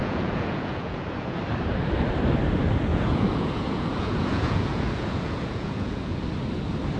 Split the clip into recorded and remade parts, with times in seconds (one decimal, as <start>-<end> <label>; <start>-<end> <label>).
0.0-1.4 remade; 1.4-2.9 recorded; 2.9-6.2 remade; 6.2-7.0 recorded